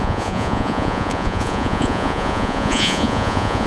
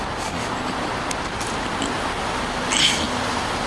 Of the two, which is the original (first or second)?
second